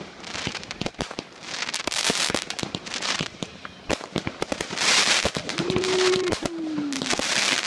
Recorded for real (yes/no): no